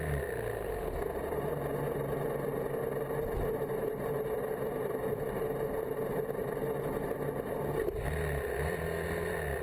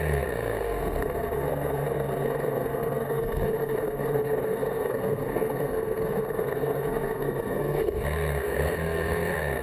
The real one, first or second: first